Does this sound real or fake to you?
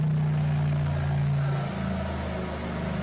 real